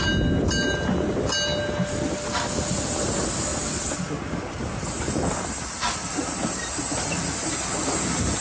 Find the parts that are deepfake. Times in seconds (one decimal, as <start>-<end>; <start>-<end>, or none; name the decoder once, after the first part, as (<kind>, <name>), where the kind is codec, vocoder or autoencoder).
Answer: none